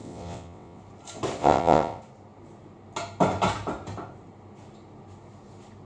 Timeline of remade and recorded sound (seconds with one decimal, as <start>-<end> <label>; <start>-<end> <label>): 0.0-0.8 remade; 0.8-1.4 recorded; 1.4-2.0 remade; 2.0-5.8 recorded